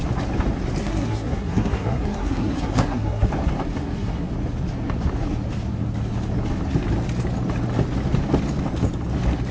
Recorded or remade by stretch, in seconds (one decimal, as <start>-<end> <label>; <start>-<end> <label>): 0.0-0.8 recorded; 0.8-3.3 remade; 3.3-3.8 recorded; 3.8-4.3 remade; 4.3-9.5 recorded